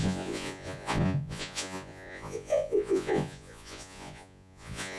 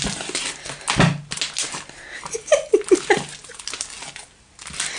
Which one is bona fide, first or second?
second